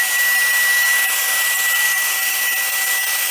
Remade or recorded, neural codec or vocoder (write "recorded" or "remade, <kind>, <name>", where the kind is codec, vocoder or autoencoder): recorded